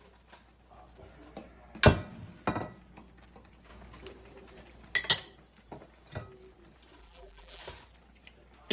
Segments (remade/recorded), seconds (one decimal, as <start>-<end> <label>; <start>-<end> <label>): 0.0-7.0 recorded; 7.0-7.6 remade; 7.6-8.7 recorded